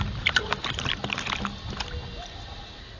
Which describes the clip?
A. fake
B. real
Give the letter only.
B